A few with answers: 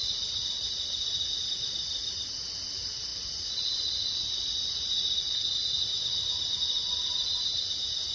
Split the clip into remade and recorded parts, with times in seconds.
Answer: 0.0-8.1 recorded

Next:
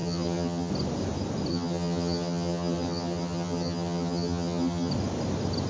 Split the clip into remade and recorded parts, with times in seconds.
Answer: 0.0-0.7 remade; 0.7-1.5 recorded; 1.5-4.9 remade; 4.9-5.7 recorded

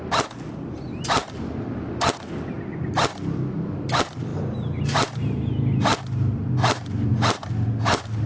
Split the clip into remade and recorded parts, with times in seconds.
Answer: 0.0-8.3 recorded